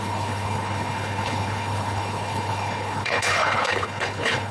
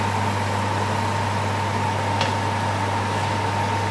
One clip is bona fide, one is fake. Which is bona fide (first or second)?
second